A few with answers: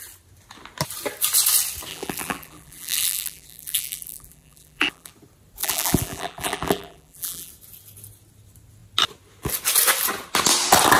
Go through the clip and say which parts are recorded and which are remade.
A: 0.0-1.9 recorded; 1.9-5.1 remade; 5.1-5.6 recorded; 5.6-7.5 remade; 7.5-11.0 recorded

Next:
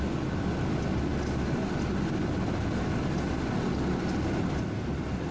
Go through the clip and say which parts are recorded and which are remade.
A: 0.0-5.3 recorded

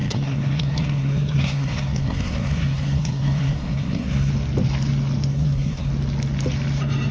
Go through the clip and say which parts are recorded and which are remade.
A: 0.0-4.3 remade; 4.3-5.3 recorded; 5.3-5.9 remade; 5.9-7.1 recorded

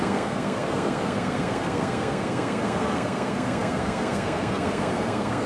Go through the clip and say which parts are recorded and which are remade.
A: 0.0-5.5 remade

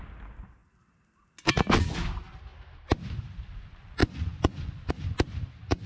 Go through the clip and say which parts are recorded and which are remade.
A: 0.0-4.0 recorded; 4.0-4.9 remade; 4.9-5.9 recorded

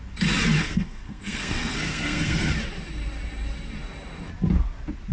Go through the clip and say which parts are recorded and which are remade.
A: 0.0-0.6 recorded; 0.6-2.5 remade; 2.5-5.1 recorded

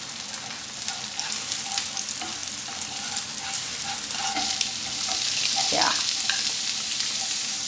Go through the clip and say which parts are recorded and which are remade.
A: 0.0-7.7 remade

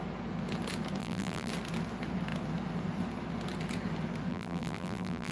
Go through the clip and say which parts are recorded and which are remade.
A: 0.0-1.0 recorded; 1.0-1.5 remade; 1.5-4.3 recorded; 4.3-5.3 remade